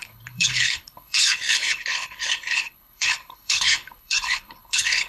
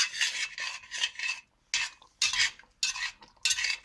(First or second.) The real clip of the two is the second